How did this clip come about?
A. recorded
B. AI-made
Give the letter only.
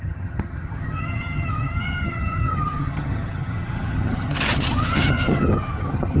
B